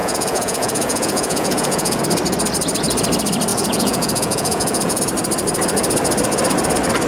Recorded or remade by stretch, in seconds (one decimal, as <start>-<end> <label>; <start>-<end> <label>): 0.0-2.0 remade; 2.0-3.5 recorded; 3.5-5.0 remade; 5.0-7.1 recorded